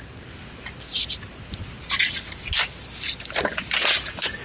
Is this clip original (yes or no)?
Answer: yes